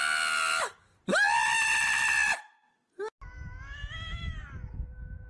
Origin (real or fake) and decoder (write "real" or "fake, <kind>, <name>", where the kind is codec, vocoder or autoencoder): real